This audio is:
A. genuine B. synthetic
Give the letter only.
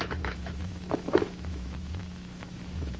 B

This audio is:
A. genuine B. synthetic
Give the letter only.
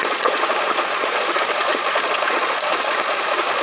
B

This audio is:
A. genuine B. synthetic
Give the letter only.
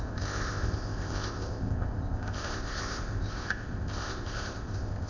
B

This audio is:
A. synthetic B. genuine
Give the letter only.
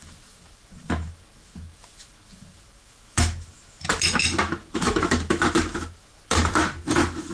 A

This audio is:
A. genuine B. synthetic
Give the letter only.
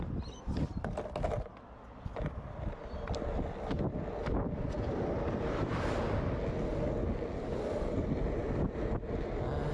A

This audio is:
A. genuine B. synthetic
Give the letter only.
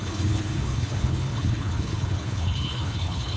B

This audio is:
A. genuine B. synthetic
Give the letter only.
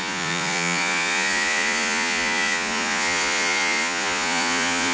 B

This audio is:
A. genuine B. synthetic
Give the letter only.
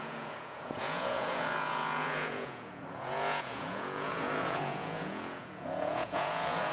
B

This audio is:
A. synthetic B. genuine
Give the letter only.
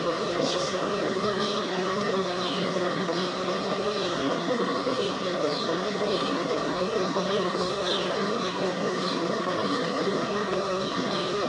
A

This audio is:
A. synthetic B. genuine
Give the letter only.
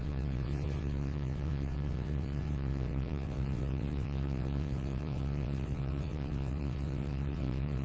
A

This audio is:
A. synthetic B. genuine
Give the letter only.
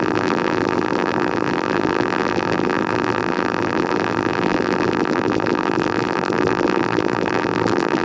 A